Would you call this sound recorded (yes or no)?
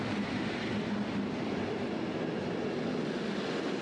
yes